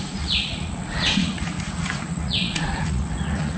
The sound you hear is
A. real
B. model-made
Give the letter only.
B